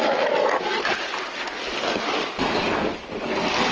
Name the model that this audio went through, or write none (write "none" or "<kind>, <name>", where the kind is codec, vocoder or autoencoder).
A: none